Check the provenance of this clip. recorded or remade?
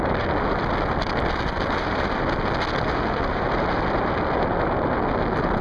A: recorded